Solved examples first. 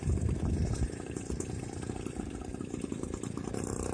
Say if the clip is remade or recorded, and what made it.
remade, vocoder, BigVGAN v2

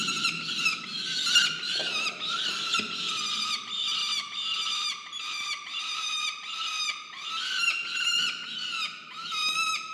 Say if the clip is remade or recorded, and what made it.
recorded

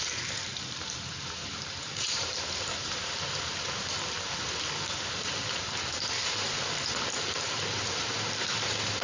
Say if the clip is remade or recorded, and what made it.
remade, vocoder, BigVGAN v2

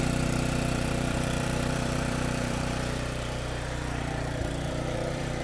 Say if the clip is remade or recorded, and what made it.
remade, vocoder, BigVGAN v2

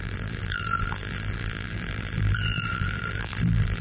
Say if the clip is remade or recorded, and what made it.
remade, vocoder, BigVGAN v2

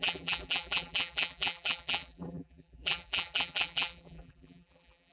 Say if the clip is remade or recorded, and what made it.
remade, vocoder, BigVGAN v2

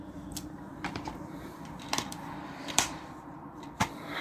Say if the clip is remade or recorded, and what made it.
remade, vocoder, BigVGAN v2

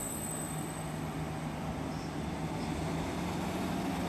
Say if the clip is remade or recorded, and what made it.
recorded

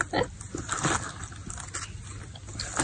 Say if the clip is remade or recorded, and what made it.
recorded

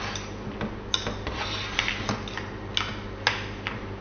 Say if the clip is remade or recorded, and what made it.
recorded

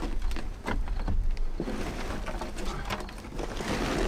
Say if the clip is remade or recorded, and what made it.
recorded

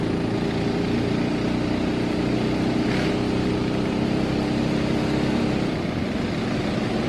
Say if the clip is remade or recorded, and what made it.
recorded